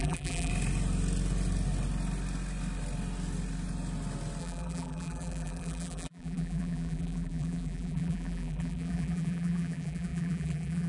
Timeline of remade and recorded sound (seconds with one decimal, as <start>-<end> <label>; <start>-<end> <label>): 0.0-0.5 remade; 0.5-4.4 recorded; 4.4-10.9 remade